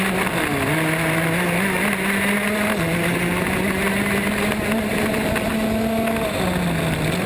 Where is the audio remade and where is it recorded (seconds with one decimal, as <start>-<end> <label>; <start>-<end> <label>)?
0.0-4.9 recorded; 4.9-5.5 remade; 5.5-7.3 recorded

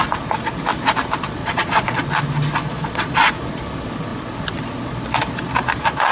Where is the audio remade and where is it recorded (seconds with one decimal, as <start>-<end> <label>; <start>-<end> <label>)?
0.0-1.4 recorded; 1.4-2.0 remade; 2.0-2.6 recorded; 2.6-3.3 remade; 3.3-6.1 recorded

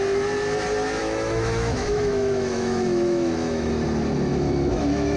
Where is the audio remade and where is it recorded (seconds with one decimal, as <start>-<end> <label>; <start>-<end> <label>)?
0.0-1.0 recorded; 1.0-3.7 remade; 3.7-4.3 recorded; 4.3-5.2 remade

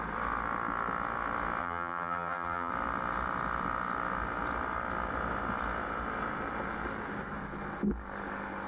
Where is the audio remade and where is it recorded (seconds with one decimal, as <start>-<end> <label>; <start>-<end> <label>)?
0.0-1.6 recorded; 1.6-2.7 remade; 2.7-8.7 recorded

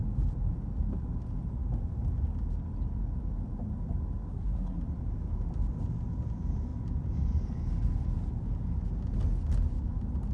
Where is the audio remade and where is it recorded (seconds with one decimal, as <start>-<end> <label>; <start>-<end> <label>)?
0.0-4.3 recorded; 4.3-4.8 remade; 4.8-10.3 recorded

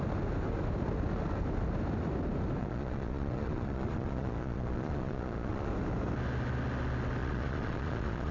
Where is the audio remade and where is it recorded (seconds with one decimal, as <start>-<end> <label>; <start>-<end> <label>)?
0.0-2.6 recorded; 2.6-5.7 remade; 5.7-7.2 recorded; 7.2-8.3 remade

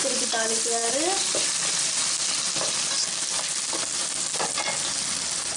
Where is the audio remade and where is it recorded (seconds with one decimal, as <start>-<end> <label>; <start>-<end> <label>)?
0.0-5.6 recorded